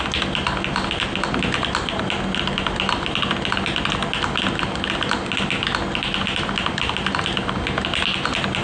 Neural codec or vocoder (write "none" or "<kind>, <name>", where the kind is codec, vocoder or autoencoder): none